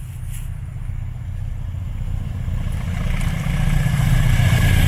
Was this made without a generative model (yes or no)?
yes